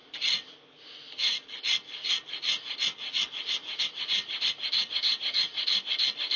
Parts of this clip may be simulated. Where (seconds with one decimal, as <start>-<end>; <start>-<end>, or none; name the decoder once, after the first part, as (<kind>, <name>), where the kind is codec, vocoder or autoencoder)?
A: 3.8-6.4 (vocoder, BigVGAN v2)